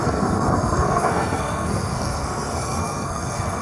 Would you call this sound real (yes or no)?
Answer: no